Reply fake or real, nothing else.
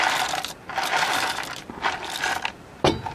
fake